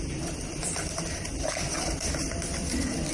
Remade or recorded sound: remade